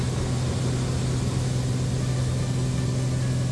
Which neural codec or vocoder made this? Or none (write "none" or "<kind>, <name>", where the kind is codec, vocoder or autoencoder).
none